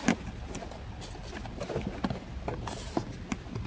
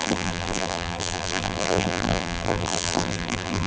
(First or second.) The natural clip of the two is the first